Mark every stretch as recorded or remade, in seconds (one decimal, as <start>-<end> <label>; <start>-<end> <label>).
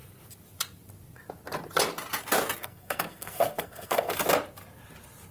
0.0-2.6 recorded; 2.6-4.1 remade; 4.1-5.3 recorded